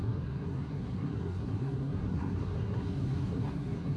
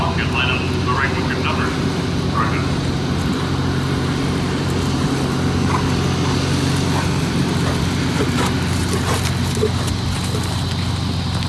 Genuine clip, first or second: second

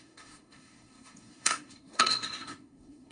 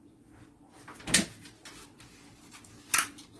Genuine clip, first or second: second